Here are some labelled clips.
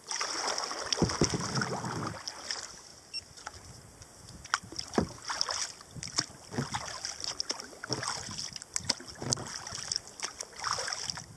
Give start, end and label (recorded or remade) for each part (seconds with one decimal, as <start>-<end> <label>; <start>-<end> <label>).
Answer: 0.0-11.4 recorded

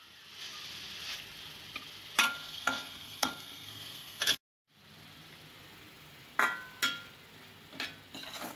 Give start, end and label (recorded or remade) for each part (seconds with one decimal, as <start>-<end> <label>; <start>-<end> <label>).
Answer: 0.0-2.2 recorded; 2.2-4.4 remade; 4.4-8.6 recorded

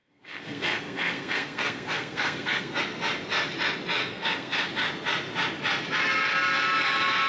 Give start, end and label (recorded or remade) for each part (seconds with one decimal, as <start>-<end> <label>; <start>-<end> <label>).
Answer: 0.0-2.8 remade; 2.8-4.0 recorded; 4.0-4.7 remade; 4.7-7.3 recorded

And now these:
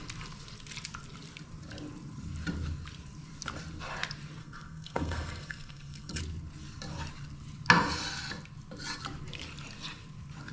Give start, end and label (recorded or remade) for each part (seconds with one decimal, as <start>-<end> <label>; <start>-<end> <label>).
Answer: 0.0-4.4 recorded; 4.4-6.2 remade; 6.2-10.5 recorded

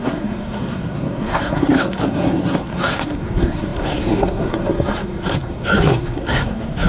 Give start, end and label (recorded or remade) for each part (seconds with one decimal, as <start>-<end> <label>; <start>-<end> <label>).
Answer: 0.0-6.9 remade